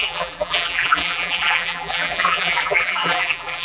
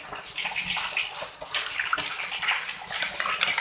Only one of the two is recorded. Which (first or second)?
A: second